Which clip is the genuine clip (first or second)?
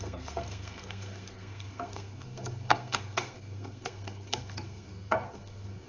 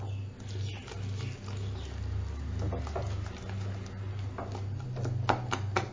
second